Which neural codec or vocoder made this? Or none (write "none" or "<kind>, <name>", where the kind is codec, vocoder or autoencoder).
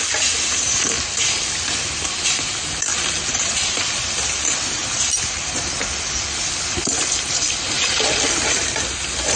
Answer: none